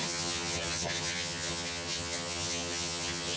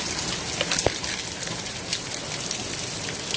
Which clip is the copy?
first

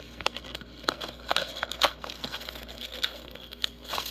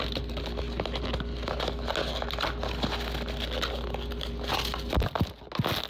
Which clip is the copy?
first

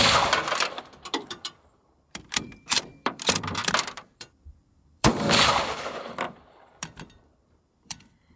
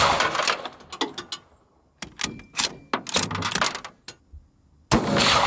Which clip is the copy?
first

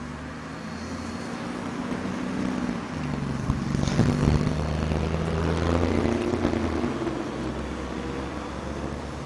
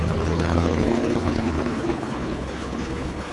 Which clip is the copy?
second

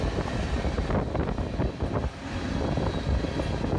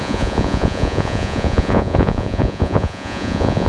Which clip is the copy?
second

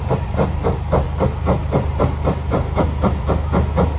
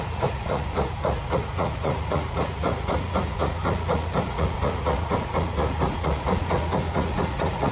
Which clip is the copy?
second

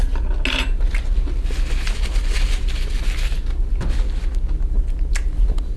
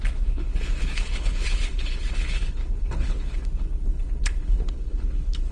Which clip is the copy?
second